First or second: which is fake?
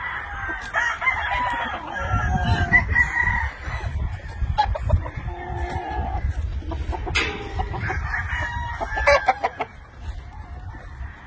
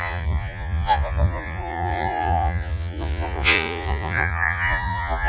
second